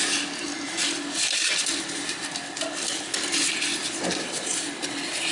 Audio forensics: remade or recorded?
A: remade